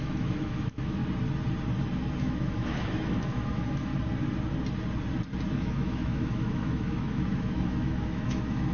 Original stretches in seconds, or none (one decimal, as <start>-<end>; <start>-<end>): 1.0-2.2; 3.9-5.6